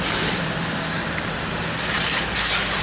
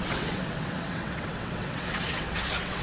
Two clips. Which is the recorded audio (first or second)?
first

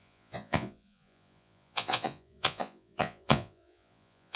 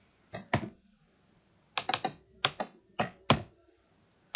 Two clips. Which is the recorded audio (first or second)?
second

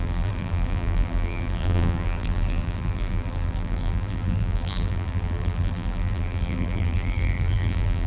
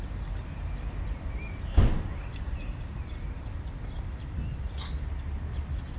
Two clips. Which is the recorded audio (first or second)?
second